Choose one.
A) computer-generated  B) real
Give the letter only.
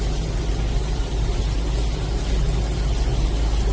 B